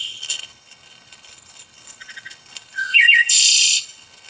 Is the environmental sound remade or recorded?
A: remade